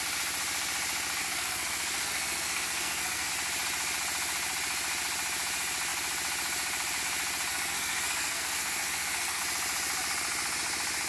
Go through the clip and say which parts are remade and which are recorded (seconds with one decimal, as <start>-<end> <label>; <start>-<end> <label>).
0.0-1.2 recorded; 1.2-3.3 remade; 3.3-7.5 recorded; 7.5-9.4 remade; 9.4-11.1 recorded